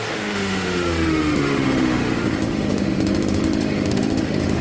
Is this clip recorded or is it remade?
remade